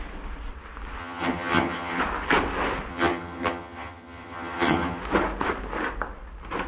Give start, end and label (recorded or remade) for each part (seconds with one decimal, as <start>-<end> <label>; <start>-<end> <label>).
0.0-1.0 recorded; 1.0-2.0 remade; 2.0-2.9 recorded; 2.9-5.0 remade; 5.0-6.7 recorded